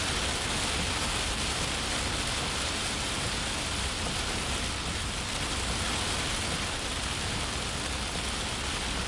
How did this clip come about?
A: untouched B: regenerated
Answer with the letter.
A